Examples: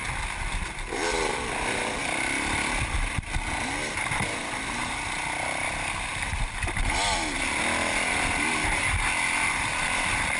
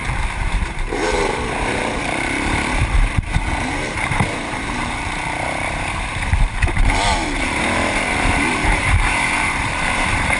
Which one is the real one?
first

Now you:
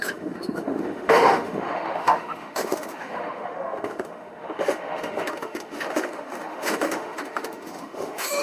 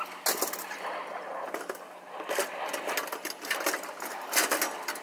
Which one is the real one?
second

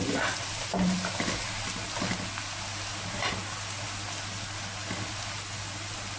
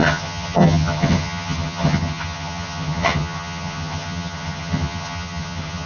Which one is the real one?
first